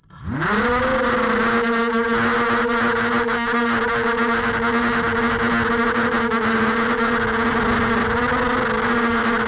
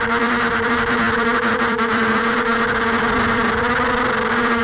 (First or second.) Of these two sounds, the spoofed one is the second